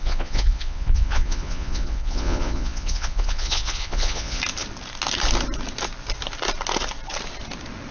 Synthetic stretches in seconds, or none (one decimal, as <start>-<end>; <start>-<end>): 0.0-4.4